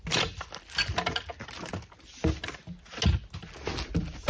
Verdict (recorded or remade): recorded